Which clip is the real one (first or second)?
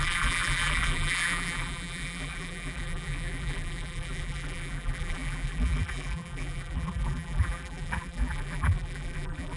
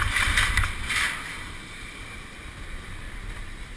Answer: second